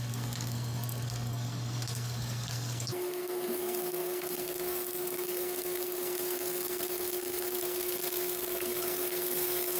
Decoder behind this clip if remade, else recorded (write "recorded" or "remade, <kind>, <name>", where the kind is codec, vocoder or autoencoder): remade, codec, SNAC